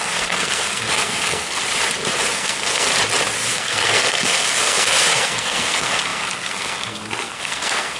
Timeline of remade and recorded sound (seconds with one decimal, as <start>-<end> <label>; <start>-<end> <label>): 0.0-1.6 remade; 1.6-2.3 recorded; 2.3-2.9 remade; 2.9-3.5 recorded; 3.5-8.0 remade